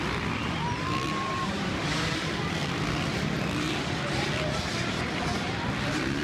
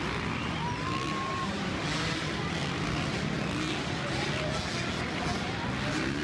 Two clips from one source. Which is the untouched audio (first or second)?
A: second